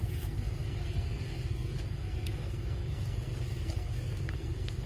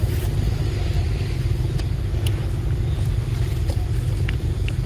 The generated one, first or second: first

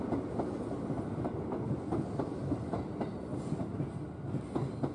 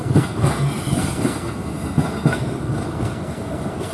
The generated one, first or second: second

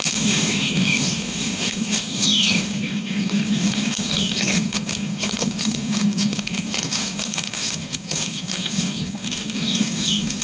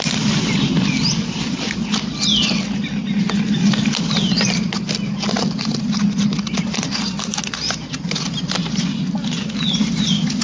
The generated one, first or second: first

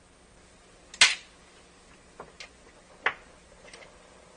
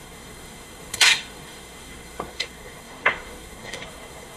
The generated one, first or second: second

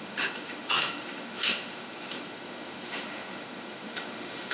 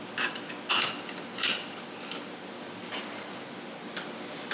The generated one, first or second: first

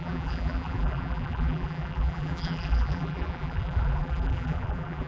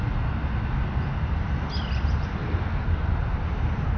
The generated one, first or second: first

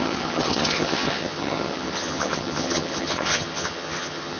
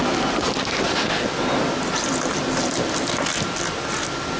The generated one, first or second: first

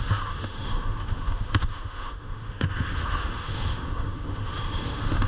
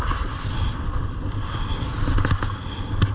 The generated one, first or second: first